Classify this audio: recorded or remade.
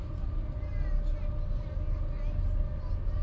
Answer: recorded